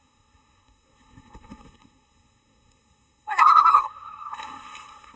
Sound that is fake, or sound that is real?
fake